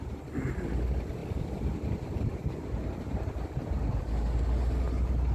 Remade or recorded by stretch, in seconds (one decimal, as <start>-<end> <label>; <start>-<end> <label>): 0.0-5.3 recorded